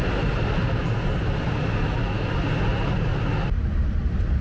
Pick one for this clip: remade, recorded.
recorded